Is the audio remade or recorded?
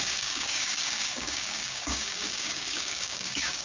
remade